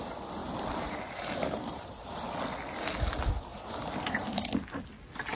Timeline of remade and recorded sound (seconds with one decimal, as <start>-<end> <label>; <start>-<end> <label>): 0.0-0.4 recorded; 0.4-2.3 remade; 2.3-3.5 recorded; 3.5-4.5 remade; 4.5-5.4 recorded